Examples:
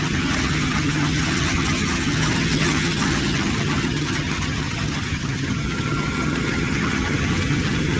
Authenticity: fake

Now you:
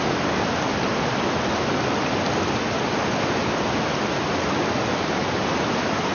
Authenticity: real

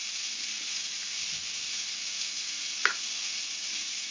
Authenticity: real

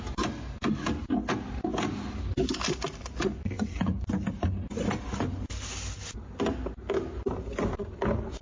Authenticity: real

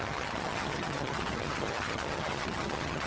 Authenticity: fake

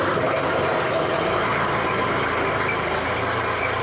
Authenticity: real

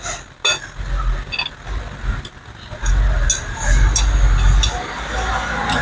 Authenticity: real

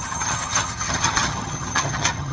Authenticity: fake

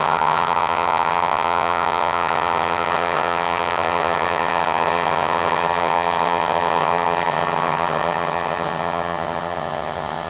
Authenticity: fake